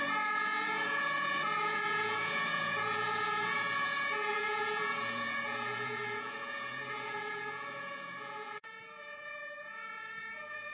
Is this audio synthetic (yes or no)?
yes